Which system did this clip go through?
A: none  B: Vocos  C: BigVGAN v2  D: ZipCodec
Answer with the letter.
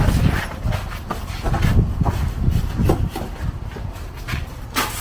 A